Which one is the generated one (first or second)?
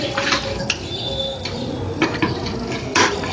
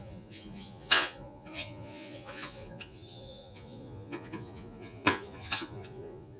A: second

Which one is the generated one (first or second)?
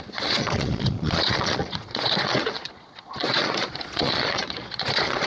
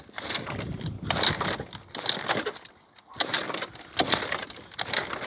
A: first